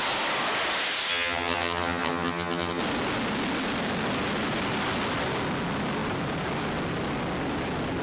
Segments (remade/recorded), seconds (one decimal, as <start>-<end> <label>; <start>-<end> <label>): 0.0-1.1 recorded; 1.1-2.8 remade; 2.8-8.0 recorded